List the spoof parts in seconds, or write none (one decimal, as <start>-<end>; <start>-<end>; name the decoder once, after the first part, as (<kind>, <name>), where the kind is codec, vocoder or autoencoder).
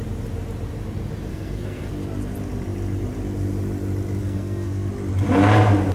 1.3-1.9 (codec, SNAC); 4.2-4.9